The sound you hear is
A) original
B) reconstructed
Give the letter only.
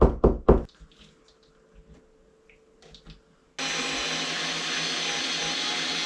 A